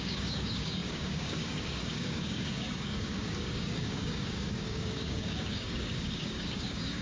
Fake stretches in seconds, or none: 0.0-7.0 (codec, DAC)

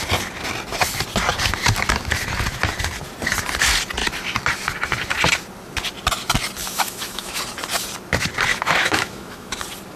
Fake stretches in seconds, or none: 6.6-7.4 (autoencoder, DAC-VAE); 8.5-9.6

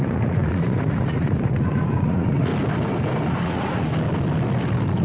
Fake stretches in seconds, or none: 0.0-2.5 (vocoder, Vocos); 3.3-3.9